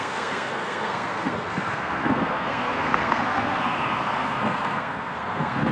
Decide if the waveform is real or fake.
fake